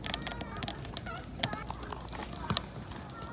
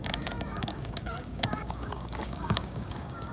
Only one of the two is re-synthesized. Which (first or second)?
second